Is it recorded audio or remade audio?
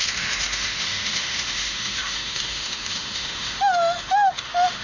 remade